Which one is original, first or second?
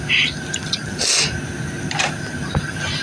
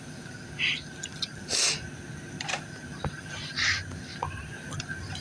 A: first